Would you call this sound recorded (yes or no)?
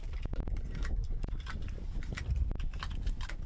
yes